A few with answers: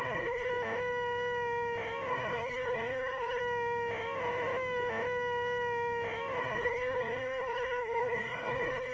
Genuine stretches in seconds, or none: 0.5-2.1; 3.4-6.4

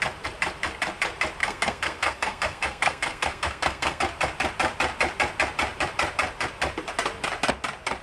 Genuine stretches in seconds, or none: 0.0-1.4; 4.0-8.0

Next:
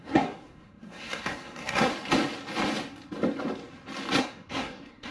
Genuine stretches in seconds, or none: 1.9-4.2